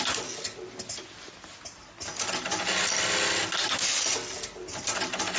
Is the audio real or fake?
real